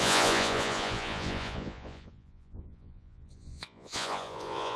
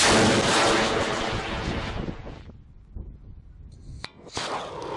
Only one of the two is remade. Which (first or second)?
first